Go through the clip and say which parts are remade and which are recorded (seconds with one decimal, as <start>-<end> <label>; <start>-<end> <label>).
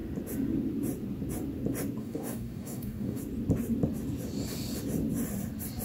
0.0-2.0 recorded; 2.0-3.2 remade; 3.2-5.8 recorded